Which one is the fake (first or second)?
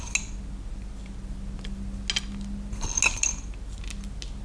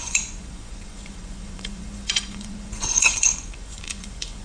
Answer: second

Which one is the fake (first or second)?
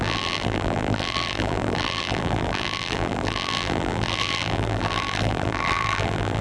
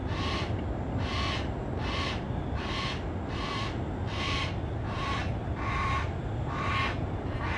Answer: first